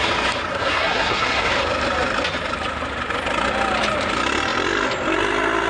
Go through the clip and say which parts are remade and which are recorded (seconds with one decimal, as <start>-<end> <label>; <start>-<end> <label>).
0.0-0.5 recorded; 0.5-1.5 remade; 1.5-5.7 recorded